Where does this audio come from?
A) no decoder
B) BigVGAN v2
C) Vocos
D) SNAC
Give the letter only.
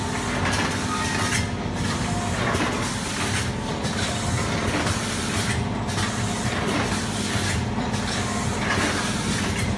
A